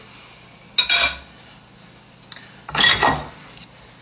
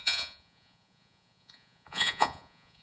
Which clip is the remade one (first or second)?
second